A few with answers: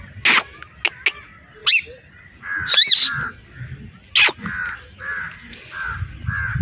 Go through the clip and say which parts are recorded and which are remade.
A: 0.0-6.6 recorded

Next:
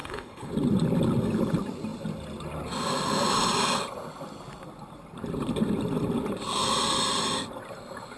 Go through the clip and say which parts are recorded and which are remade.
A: 0.0-0.5 remade; 0.5-8.2 recorded

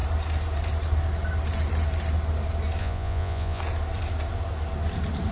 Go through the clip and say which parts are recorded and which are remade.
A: 0.0-2.8 recorded; 2.8-3.6 remade; 3.6-5.3 recorded

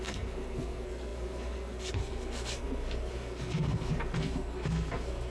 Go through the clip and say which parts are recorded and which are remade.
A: 0.0-5.3 remade